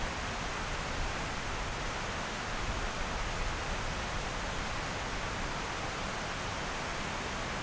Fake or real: real